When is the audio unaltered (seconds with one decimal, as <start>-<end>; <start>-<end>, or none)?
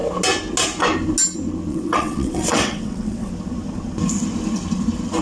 0.0-1.7; 3.3-5.2